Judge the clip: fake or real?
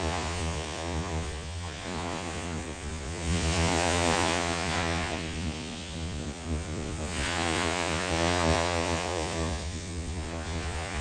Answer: fake